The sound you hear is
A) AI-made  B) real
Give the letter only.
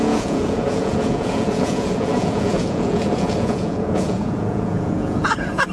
A